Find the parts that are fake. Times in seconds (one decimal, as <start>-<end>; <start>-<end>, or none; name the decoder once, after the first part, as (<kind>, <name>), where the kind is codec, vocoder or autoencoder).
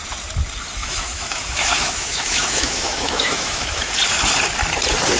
0.8-3.9 (autoencoder, DAC-VAE)